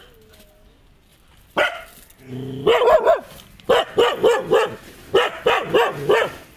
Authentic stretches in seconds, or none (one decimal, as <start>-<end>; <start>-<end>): 0.0-6.6